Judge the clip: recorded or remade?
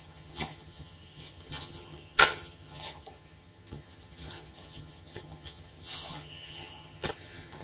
remade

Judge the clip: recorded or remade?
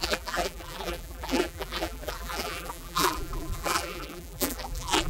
remade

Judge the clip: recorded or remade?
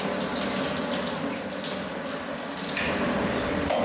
recorded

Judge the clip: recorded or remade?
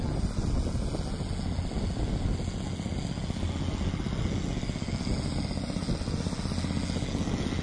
recorded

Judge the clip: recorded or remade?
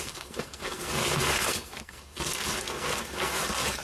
remade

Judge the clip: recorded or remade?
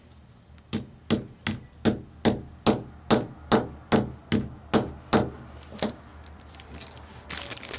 recorded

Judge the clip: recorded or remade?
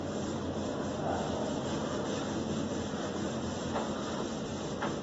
recorded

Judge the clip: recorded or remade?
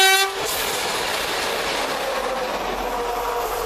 recorded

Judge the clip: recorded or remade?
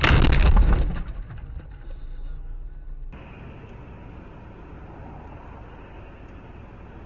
recorded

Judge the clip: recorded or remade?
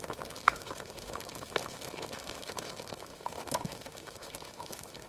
remade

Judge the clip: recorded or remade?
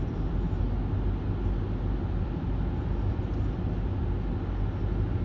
recorded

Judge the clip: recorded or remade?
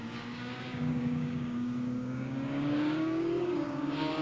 remade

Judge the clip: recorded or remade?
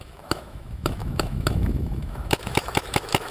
remade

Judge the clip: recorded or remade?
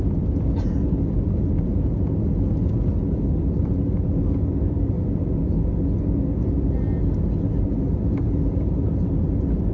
recorded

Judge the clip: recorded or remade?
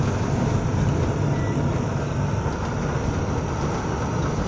recorded